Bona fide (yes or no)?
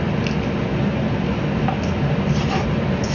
yes